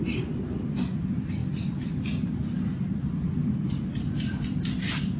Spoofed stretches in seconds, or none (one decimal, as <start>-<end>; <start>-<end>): none